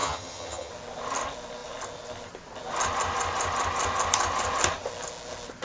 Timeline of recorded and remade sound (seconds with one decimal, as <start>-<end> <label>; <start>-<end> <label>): 0.0-0.7 remade; 0.7-5.6 recorded